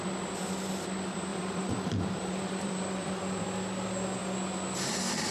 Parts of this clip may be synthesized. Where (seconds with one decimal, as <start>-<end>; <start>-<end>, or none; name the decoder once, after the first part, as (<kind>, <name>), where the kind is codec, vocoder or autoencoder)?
1.3-3.2 (vocoder, BigVGAN v2)